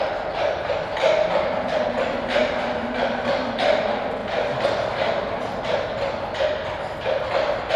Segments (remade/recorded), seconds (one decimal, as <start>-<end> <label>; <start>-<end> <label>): 0.0-7.8 recorded